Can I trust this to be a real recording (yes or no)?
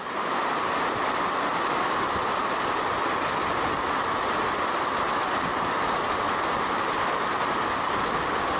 yes